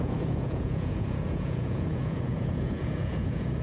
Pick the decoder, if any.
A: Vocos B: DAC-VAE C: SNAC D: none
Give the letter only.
A